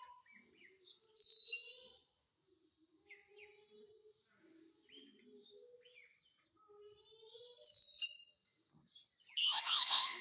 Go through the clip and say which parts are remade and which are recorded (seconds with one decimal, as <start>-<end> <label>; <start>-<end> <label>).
0.0-9.4 recorded; 9.4-10.2 remade